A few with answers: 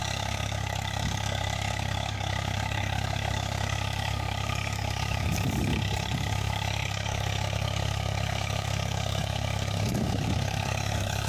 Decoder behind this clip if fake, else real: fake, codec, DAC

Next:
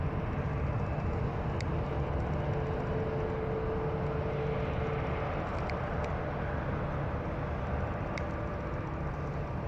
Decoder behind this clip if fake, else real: real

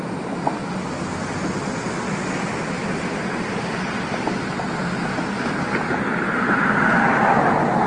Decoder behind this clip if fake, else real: real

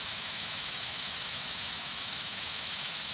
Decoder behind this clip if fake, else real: fake, autoencoder, DAC-VAE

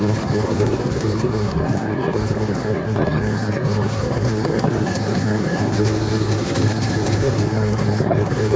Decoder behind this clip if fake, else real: fake, codec, SNAC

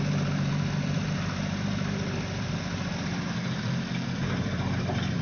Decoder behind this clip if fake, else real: fake, vocoder, BigVGAN v2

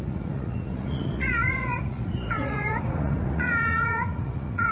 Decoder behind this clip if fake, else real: fake, vocoder, Vocos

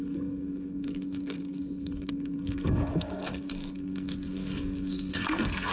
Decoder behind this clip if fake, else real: fake, codec, SNAC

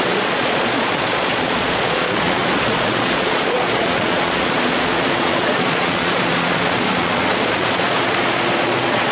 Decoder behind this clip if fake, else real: fake, vocoder, Vocos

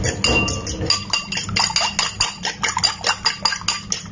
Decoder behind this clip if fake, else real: real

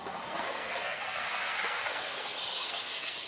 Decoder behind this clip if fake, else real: fake, codec, SNAC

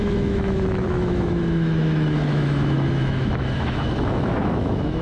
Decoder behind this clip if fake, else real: fake, autoencoder, DAC-VAE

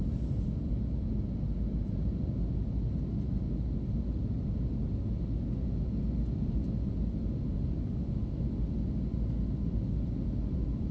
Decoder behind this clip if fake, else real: real